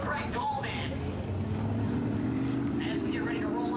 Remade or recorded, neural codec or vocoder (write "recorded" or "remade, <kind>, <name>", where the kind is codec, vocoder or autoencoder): recorded